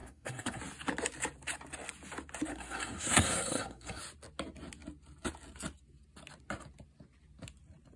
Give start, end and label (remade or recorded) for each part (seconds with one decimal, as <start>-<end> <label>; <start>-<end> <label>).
0.0-0.6 remade; 0.6-2.5 recorded; 2.5-4.0 remade; 4.0-8.0 recorded